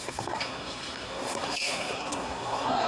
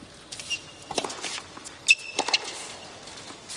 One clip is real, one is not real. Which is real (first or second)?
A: second